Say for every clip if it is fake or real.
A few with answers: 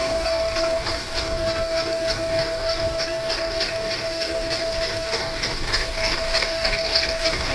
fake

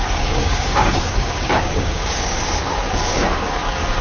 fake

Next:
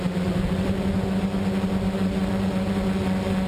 real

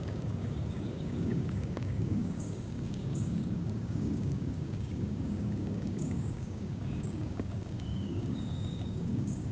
fake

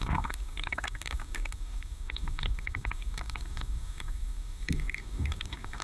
fake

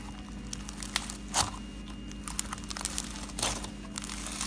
real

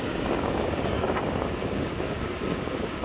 fake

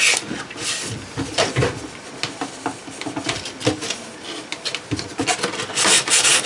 real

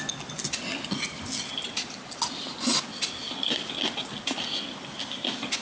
real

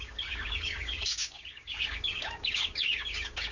fake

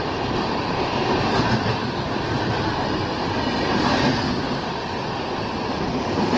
real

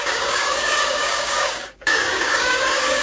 fake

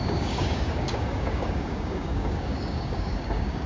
fake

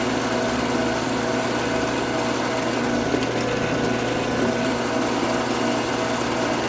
real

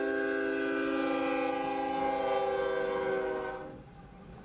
real